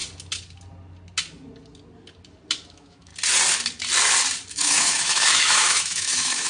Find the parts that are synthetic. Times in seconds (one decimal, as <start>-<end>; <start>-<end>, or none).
2.7-3.1; 4.5-6.5